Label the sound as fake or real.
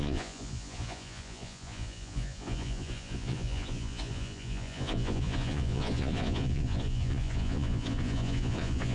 fake